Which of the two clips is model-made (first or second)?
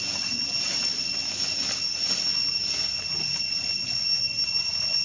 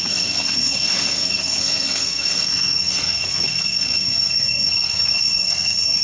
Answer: second